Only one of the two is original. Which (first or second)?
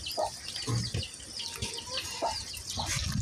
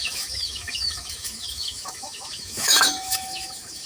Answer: first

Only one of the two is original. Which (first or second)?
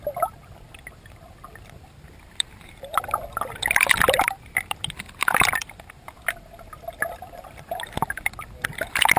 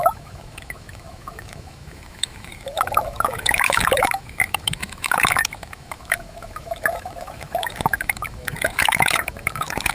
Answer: first